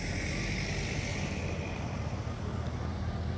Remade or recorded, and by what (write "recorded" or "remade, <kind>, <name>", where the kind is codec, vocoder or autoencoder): recorded